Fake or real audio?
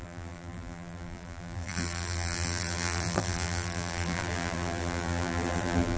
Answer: fake